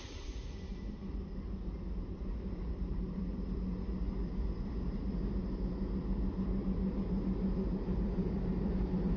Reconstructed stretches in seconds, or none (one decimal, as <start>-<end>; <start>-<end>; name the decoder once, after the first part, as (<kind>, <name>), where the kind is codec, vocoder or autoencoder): 0.0-1.0 (vocoder, BigVGAN v2); 2.7-3.2; 6.5-9.2